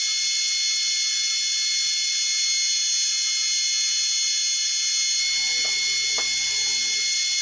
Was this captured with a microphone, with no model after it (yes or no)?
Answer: yes